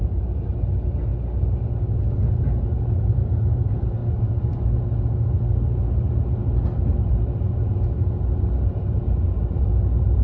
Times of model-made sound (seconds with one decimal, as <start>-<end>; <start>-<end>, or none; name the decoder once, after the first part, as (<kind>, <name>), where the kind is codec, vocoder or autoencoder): 0.0-1.1 (vocoder, BigVGAN v2); 2.8-4.0; 7.1-10.2